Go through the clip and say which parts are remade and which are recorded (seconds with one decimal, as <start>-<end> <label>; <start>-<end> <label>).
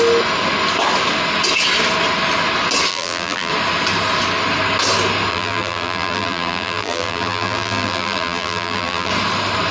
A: 0.0-2.9 recorded; 2.9-3.5 remade; 3.5-5.3 recorded; 5.3-9.1 remade; 9.1-9.7 recorded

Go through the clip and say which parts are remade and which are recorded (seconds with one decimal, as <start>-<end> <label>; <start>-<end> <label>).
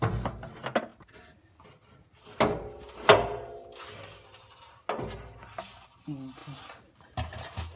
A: 0.0-7.8 recorded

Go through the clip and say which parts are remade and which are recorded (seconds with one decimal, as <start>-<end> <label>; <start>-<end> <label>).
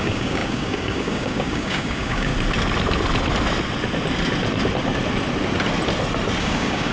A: 0.0-2.3 remade; 2.3-6.4 recorded; 6.4-6.9 remade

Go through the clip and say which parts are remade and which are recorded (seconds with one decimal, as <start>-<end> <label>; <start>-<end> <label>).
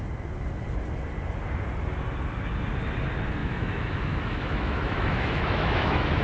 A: 0.0-3.4 recorded; 3.4-6.2 remade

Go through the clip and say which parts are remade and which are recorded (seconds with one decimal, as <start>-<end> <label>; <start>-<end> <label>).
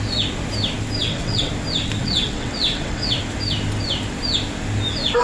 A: 0.0-1.0 recorded; 1.0-1.5 remade; 1.5-2.0 recorded; 2.0-3.2 remade; 3.2-5.2 recorded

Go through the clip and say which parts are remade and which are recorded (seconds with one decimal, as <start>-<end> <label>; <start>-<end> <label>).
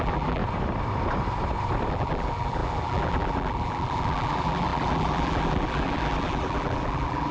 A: 0.0-0.4 remade; 0.4-1.9 recorded; 1.9-7.3 remade